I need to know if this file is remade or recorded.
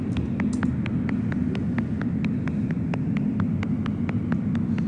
recorded